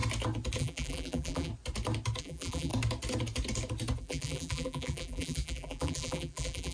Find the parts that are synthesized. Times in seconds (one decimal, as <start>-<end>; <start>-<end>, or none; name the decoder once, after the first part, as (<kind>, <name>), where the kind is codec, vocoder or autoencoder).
0.6-1.5 (vocoder, BigVGAN v2); 2.2-2.7; 4.0-6.7